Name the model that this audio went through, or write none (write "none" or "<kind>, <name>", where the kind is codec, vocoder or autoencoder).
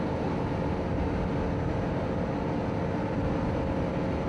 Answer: none